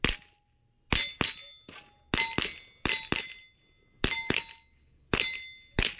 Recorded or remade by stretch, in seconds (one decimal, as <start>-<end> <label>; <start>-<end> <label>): 0.0-6.0 recorded